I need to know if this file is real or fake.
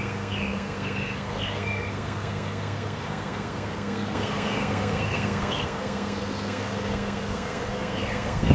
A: fake